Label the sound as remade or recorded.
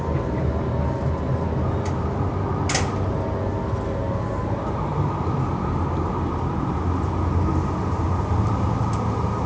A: recorded